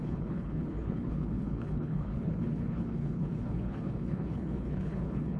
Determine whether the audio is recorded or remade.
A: remade